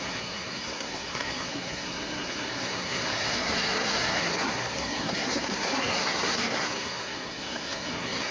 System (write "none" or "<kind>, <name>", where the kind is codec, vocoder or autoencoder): codec, SNAC